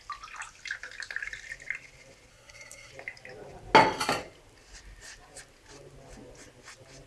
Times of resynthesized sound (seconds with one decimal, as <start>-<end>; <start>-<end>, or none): 2.3-2.9